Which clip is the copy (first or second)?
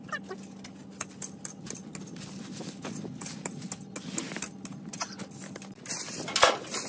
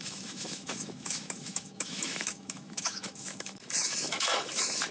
second